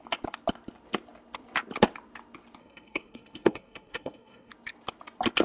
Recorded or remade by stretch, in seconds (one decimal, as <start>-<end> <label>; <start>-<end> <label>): 0.0-2.6 recorded; 2.6-4.5 remade; 4.5-5.4 recorded